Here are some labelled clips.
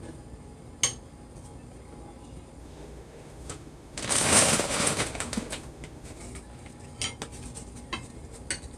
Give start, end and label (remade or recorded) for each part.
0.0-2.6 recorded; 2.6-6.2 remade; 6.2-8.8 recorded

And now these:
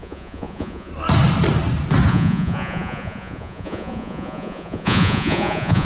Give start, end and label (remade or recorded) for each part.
0.0-0.9 remade; 0.9-2.1 recorded; 2.1-5.8 remade

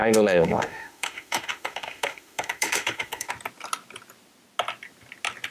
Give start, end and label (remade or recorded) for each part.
0.0-3.3 remade; 3.3-5.5 recorded

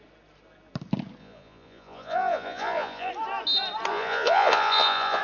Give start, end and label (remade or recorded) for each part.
0.0-1.2 recorded; 1.2-3.1 remade; 3.1-3.9 recorded; 3.9-5.2 remade

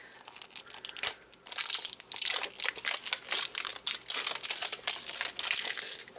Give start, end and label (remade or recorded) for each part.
0.0-6.2 recorded

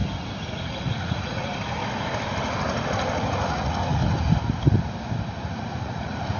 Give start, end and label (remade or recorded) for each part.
0.0-0.5 recorded; 0.5-1.5 remade; 1.5-3.2 recorded; 3.2-4.0 remade; 4.0-5.5 recorded; 5.5-6.4 remade

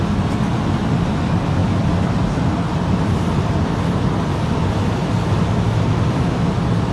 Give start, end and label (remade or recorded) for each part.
0.0-6.9 recorded

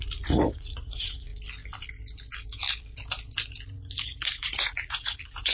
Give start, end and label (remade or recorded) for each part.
0.0-1.3 remade; 1.3-4.0 recorded; 4.0-5.5 remade